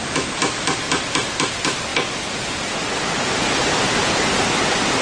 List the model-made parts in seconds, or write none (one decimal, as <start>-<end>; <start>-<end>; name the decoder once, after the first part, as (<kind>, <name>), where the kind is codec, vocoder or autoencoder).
none